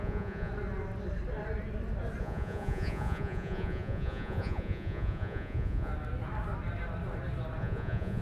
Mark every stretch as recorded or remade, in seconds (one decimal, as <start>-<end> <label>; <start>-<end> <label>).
0.0-0.5 remade; 0.5-2.2 recorded; 2.2-5.9 remade; 5.9-7.6 recorded; 7.6-8.2 remade